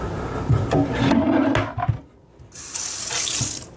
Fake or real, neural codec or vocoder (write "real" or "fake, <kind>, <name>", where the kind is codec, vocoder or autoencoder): real